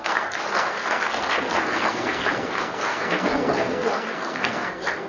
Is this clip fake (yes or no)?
yes